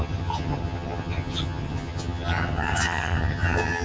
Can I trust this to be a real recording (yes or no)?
no